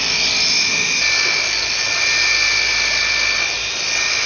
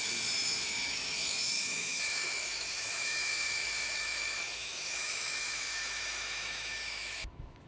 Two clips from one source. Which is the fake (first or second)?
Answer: second